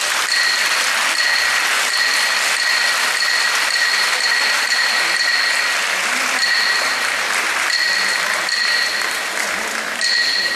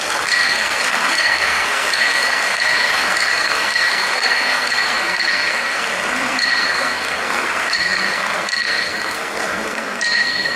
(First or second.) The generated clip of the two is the second